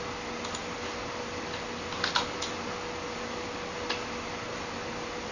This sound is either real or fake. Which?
real